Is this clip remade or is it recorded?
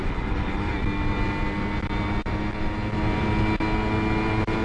recorded